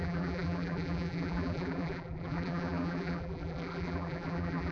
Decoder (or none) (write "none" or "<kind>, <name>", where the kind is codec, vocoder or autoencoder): vocoder, BigVGAN v2